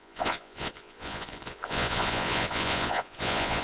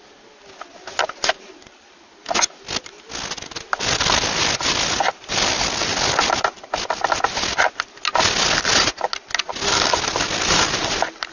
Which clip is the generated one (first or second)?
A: first